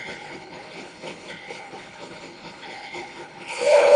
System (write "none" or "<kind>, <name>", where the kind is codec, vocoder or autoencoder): codec, HILCodec